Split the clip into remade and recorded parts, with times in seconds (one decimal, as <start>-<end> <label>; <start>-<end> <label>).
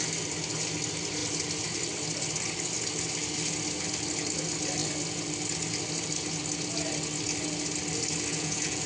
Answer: 0.0-8.3 recorded; 8.3-8.9 remade